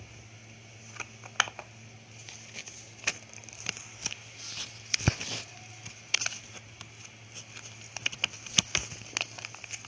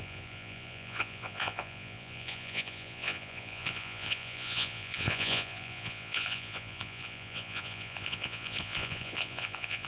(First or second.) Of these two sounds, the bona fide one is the first